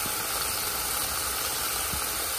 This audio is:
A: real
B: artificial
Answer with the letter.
A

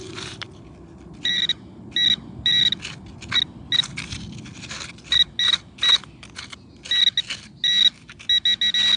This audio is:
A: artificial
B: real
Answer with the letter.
B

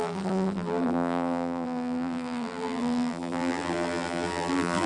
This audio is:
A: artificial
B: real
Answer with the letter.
A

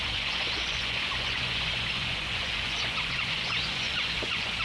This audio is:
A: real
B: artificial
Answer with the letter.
B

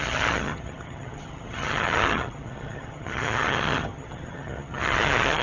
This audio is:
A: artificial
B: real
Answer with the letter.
A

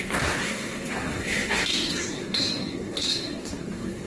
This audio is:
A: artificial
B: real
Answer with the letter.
A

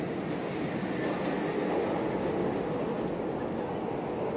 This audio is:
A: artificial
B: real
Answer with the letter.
B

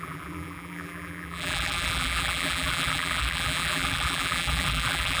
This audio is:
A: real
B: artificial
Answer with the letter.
B